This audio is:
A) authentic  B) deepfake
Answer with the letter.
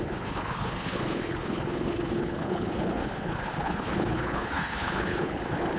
B